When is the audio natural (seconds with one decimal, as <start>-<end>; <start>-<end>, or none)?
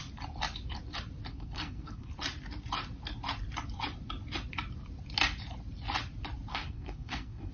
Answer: 0.0-1.3; 2.1-6.5